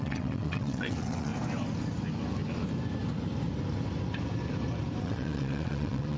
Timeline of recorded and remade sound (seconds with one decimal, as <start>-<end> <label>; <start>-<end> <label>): 0.0-1.3 remade; 1.3-5.0 recorded; 5.0-6.2 remade